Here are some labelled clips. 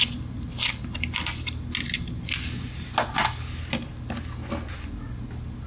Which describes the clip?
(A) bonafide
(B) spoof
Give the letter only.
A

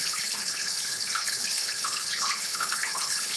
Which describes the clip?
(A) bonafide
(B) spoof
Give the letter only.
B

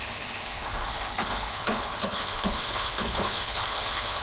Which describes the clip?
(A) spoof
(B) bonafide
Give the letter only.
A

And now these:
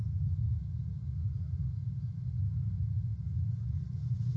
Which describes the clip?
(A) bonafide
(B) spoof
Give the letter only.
A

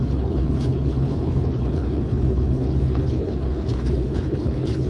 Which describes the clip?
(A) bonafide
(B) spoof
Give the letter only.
B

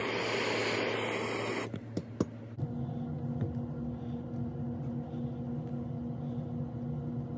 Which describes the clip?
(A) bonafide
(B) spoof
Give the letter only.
A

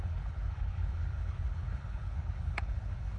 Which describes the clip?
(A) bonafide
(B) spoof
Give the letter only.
B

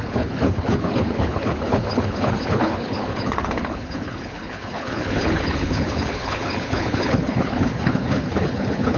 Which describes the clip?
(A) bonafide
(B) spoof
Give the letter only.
B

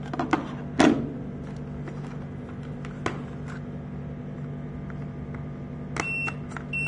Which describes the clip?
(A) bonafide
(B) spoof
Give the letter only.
A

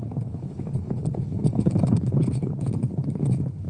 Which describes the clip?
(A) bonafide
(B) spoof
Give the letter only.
B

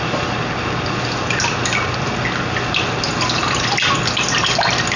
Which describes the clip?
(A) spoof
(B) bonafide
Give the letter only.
B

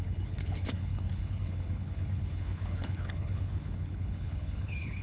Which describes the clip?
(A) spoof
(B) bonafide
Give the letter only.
A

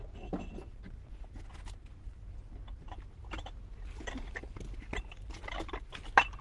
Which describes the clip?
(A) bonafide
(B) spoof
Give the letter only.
A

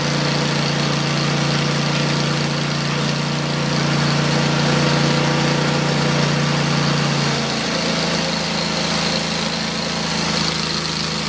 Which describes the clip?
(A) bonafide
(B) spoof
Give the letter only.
A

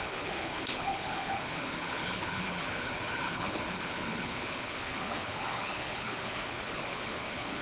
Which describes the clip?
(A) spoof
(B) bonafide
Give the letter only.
A